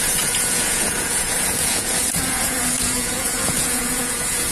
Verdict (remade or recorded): remade